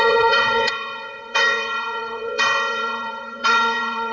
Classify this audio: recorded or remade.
remade